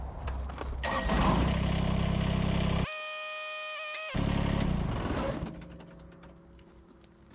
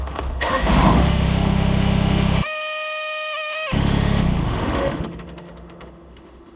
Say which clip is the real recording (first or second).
first